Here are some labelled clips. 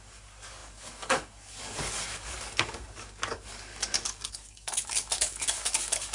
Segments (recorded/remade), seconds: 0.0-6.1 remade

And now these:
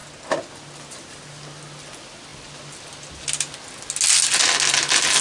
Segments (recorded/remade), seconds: 0.0-5.2 recorded